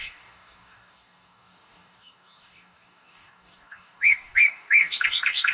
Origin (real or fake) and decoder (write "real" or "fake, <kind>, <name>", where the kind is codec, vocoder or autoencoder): fake, codec, DAC